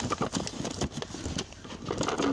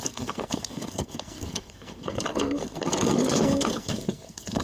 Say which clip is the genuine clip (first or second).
first